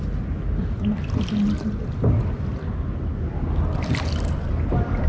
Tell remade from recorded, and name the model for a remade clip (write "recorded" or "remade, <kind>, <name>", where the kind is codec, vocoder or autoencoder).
recorded